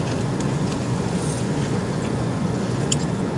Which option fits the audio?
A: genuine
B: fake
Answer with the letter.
B